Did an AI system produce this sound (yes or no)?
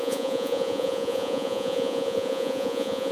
yes